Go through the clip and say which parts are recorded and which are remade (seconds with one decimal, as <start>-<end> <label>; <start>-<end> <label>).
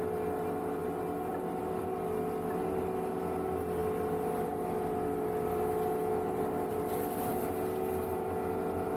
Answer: 0.0-9.0 recorded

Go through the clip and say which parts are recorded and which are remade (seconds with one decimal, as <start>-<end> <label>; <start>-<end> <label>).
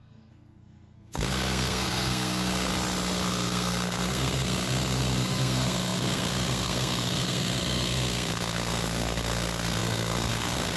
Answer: 0.0-2.7 remade; 2.7-3.3 recorded; 3.3-10.8 remade